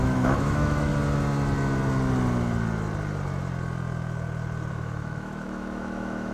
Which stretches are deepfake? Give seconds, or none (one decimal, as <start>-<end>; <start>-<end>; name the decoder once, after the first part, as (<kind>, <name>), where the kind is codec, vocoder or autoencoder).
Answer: 0.0-0.9 (autoencoder, DAC-VAE); 4.7-6.3